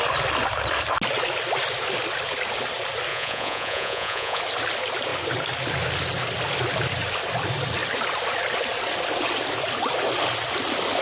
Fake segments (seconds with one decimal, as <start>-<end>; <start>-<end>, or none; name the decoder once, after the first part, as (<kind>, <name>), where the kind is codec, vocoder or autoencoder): 3.1-4.4 (vocoder, Vocos)